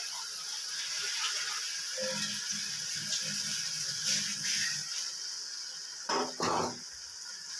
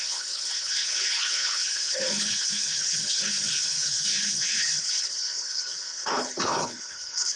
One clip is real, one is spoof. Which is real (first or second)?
first